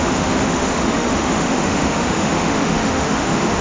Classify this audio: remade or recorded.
remade